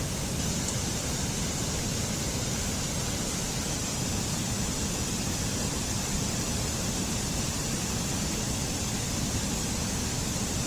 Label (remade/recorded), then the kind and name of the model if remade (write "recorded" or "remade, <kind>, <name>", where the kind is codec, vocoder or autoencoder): recorded